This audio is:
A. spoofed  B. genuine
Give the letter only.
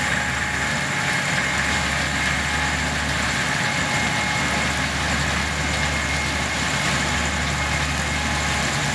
B